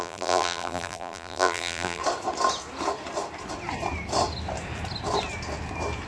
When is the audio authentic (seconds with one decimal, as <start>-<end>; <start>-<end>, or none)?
2.0-6.1